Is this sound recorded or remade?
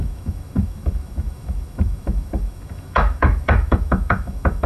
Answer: remade